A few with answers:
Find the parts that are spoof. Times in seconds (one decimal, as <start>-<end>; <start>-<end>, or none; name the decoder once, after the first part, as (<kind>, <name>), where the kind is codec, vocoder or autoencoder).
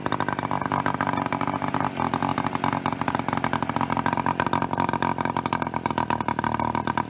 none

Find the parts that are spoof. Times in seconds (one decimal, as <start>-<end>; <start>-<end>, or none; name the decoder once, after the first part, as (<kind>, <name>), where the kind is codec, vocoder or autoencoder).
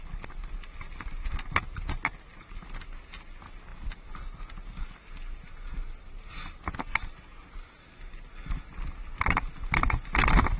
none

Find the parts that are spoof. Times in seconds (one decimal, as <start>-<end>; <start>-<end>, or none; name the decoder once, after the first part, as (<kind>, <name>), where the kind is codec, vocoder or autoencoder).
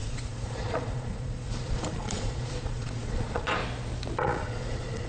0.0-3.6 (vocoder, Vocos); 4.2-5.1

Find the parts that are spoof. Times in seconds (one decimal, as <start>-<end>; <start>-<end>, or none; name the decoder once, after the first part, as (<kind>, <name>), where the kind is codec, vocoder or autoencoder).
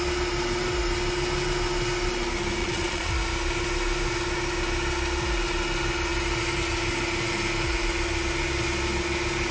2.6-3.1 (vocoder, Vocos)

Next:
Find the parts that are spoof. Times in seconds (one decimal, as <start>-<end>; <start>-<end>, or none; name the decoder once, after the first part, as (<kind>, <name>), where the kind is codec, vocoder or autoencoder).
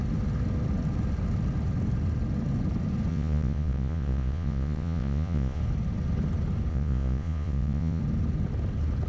3.1-5.6 (vocoder, Vocos); 6.7-8.0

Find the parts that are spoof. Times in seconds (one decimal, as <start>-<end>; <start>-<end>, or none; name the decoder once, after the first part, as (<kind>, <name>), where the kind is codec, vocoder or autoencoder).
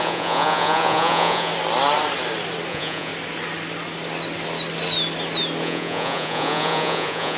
0.0-1.5 (vocoder, Vocos); 2.7-3.1; 5.6-7.4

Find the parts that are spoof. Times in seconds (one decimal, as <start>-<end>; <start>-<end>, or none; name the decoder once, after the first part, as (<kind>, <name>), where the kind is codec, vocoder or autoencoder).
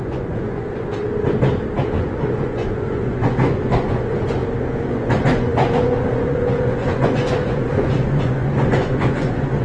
0.0-0.9 (vocoder, Vocos); 1.9-4.4; 4.9-9.6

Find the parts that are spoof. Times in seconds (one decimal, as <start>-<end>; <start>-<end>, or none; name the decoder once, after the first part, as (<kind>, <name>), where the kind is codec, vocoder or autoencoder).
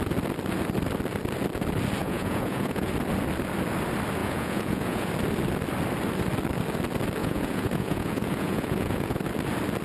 2.0-2.9 (vocoder, Vocos); 4.2-5.1; 7.2-9.2